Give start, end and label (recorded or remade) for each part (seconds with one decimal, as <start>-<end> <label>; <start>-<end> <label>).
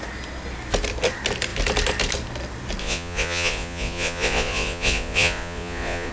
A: 0.0-2.8 recorded; 2.8-6.1 remade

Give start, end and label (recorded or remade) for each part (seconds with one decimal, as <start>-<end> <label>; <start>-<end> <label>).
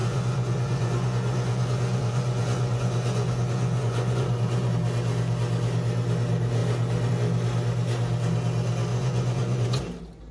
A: 0.0-4.7 remade; 4.7-8.9 recorded; 8.9-9.8 remade; 9.8-10.3 recorded